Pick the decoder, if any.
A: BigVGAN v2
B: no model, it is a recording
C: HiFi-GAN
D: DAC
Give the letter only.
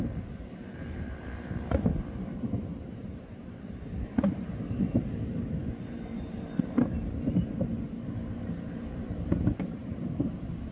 A